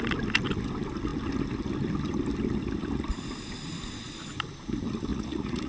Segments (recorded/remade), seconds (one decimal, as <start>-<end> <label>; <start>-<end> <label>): 0.0-5.1 recorded; 5.1-5.7 remade